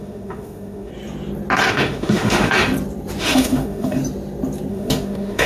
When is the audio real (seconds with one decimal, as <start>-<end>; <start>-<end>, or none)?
0.9-1.7; 2.7-3.2; 4.0-4.7